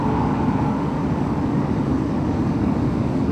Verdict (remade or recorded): remade